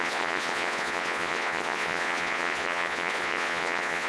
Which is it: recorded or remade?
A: remade